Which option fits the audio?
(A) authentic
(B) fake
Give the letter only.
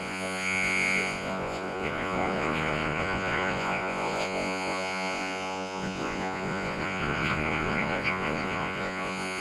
B